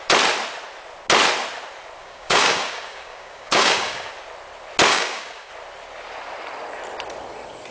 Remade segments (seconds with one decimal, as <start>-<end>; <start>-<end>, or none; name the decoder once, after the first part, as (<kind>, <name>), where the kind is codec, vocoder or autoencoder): 2.0-4.1 (codec, DAC); 4.9-5.5